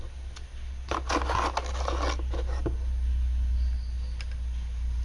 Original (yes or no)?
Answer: yes